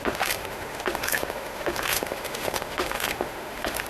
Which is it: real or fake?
fake